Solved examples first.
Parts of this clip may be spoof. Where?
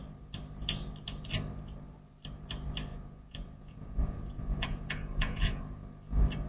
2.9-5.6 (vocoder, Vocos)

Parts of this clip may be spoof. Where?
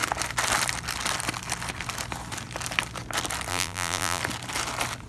3.5-4.2 (vocoder, BigVGAN v2)